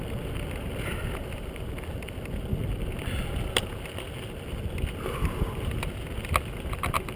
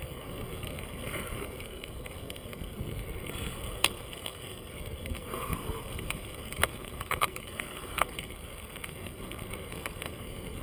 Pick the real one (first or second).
first